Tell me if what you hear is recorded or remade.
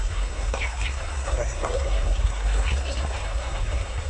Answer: remade